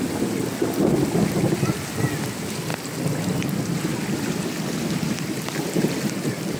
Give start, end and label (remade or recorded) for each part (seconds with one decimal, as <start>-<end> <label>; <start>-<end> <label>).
0.0-6.6 recorded